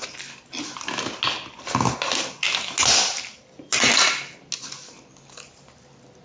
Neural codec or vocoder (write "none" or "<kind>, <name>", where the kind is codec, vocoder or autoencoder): none